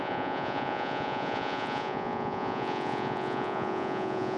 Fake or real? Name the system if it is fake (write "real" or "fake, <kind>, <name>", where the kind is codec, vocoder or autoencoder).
fake, vocoder, Vocos